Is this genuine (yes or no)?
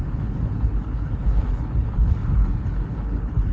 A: no